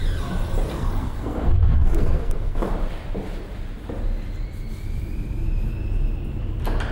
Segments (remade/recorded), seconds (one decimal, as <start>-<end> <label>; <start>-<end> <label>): 0.0-0.7 recorded; 0.7-2.7 remade; 2.7-6.9 recorded